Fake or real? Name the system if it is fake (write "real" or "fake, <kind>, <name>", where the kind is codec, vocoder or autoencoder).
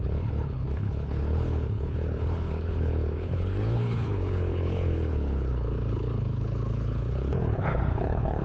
fake, codec, HILCodec